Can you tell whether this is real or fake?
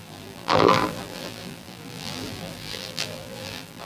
fake